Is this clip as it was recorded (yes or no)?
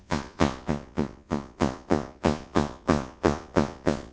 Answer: no